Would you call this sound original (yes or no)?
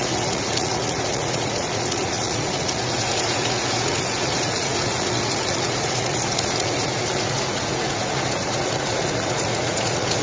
no